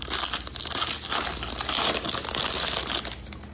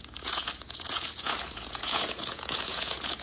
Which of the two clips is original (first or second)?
first